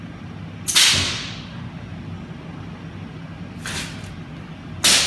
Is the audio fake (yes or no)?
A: no